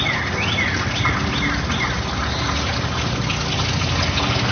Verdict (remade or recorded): recorded